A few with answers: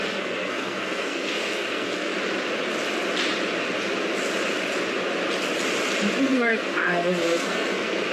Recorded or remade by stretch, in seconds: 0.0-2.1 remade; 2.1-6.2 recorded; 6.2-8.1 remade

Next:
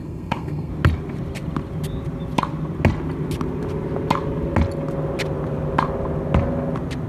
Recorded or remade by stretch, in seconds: 0.0-0.7 remade; 0.7-7.1 recorded

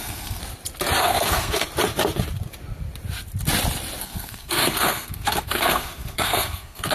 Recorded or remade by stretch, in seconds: 0.0-0.4 remade; 0.4-1.0 recorded; 1.0-1.6 remade; 1.6-4.0 recorded; 4.0-6.9 remade

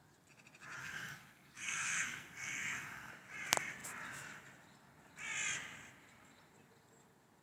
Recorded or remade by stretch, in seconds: 0.0-0.8 recorded; 0.8-3.1 remade; 3.1-7.4 recorded

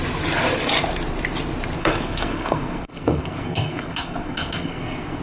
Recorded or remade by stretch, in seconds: 0.0-1.8 recorded; 1.8-5.2 remade

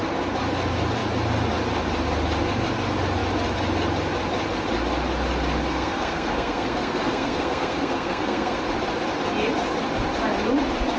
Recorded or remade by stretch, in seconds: 0.0-5.7 recorded; 5.7-8.6 remade; 8.6-11.0 recorded